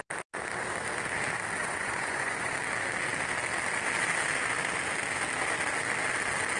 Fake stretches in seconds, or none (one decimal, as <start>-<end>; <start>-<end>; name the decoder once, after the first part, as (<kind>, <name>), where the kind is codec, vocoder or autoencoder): 1.6-2.5 (vocoder, Vocos)